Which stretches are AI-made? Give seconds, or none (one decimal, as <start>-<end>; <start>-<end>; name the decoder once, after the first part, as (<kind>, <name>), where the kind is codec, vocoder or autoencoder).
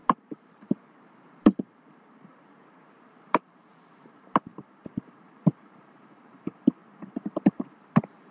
0.0-6.8 (vocoder, BigVGAN v2); 7.5-8.3